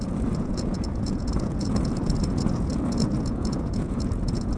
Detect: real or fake fake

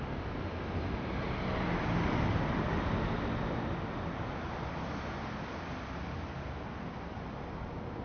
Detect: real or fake real